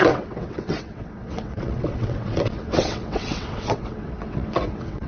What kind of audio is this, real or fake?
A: fake